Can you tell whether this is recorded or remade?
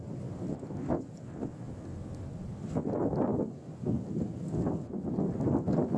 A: recorded